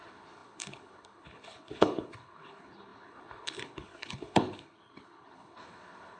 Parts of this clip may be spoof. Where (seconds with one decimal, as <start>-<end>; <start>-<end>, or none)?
0.0-6.2